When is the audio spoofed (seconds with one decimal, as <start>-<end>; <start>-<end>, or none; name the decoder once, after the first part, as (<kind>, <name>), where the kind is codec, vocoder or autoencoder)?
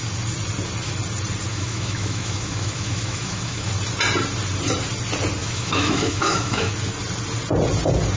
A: 1.5-3.7 (autoencoder, DAC-VAE); 5.4-6.7